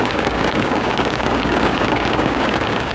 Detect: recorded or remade remade